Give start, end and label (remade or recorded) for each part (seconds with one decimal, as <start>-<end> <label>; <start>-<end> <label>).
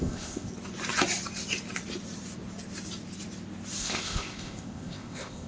0.0-0.5 remade; 0.5-3.8 recorded; 3.8-5.5 remade